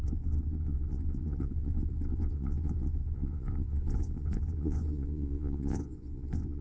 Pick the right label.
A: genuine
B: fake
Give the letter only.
B